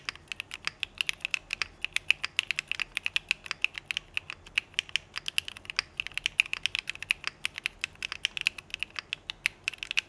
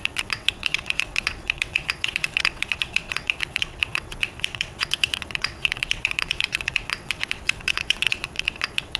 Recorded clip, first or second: first